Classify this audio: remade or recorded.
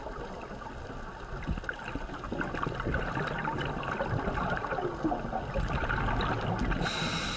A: recorded